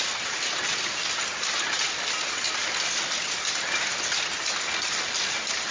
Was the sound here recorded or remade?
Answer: recorded